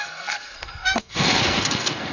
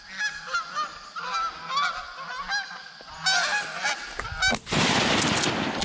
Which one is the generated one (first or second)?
first